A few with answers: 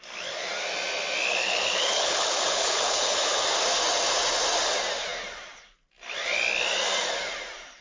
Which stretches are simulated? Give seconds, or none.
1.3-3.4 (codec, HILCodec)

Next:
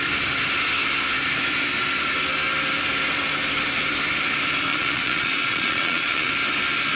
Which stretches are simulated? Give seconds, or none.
4.7-6.3 (vocoder, Vocos)